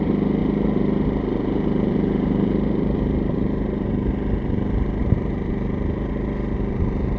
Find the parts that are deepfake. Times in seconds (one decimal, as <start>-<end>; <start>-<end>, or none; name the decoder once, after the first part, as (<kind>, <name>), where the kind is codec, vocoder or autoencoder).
0.4-3.9 (vocoder, BigVGAN v2); 5.0-6.1